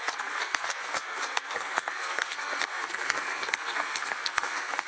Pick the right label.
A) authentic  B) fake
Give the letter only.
B